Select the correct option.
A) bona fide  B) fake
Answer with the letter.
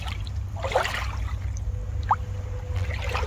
A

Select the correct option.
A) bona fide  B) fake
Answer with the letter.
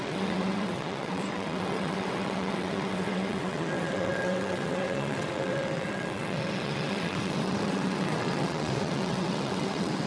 B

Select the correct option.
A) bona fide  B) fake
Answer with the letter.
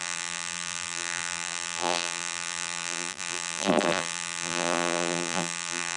B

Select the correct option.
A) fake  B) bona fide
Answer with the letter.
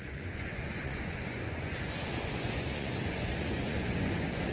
A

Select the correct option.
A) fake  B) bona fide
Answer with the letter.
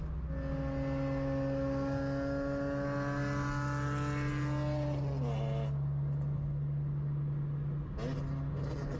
B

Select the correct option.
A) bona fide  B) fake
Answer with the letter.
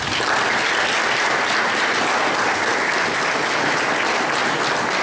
A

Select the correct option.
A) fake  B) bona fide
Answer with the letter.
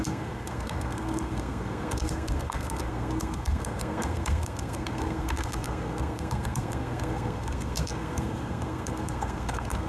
A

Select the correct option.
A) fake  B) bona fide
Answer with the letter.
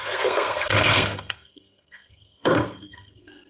A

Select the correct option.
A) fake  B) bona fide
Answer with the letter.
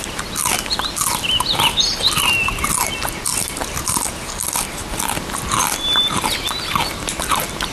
B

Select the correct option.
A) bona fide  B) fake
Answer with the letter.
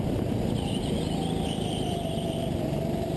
A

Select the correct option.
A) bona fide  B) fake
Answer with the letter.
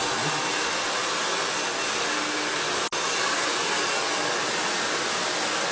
A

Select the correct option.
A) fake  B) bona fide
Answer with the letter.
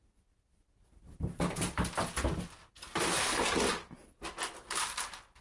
B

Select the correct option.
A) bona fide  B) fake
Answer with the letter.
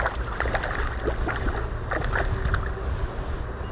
A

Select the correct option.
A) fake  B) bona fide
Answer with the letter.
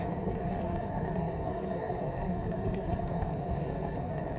A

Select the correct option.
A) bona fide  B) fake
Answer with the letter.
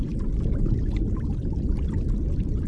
A